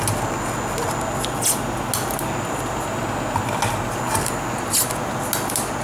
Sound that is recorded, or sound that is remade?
recorded